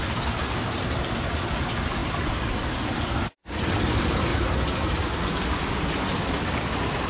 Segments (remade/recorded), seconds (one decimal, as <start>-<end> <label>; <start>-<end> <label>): 0.0-7.1 recorded